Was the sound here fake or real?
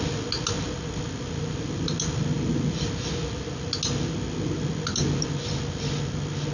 real